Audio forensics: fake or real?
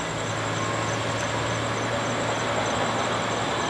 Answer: real